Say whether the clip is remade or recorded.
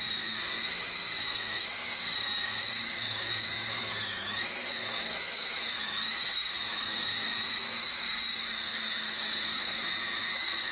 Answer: remade